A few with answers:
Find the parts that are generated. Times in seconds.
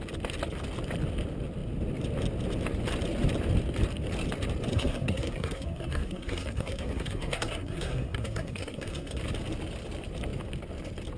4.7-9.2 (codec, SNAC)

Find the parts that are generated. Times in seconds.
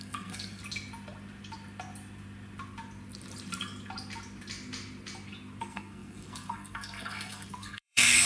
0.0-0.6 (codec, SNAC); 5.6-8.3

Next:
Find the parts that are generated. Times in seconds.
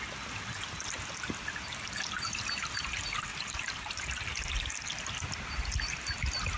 none